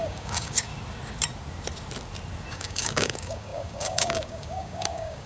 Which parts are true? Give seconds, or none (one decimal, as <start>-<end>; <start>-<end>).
0.7-2.5